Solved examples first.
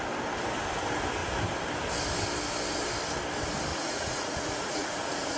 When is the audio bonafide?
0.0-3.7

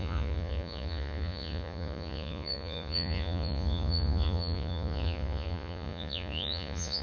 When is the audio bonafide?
none

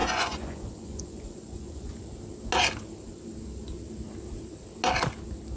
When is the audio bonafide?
2.0-5.6

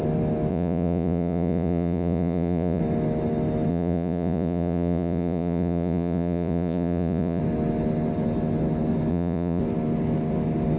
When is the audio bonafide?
0.0-0.5; 2.8-3.7; 7.4-9.1; 9.6-10.8